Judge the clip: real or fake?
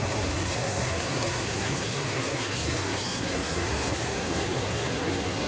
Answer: fake